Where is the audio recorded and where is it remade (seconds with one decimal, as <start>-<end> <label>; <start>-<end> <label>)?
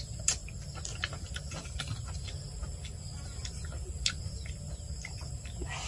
0.0-5.9 recorded